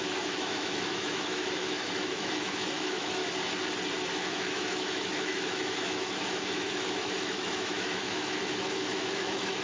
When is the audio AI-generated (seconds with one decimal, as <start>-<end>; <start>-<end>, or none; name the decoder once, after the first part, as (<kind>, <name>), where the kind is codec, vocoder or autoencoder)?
0.0-3.2 (autoencoder, DAC-VAE); 4.1-9.6